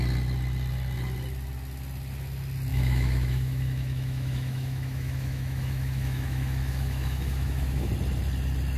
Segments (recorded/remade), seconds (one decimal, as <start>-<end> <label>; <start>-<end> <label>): 0.0-2.7 recorded; 2.7-7.9 remade; 7.9-8.8 recorded